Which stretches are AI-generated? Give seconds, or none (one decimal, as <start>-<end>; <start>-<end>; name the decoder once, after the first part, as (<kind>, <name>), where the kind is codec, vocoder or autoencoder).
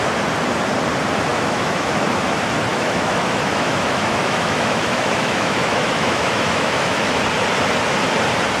1.3-1.9 (autoencoder, DAC-VAE); 2.7-7.2